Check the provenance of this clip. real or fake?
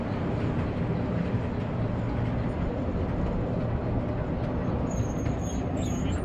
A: real